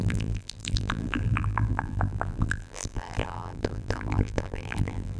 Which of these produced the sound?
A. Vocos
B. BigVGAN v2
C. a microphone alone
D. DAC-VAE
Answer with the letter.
B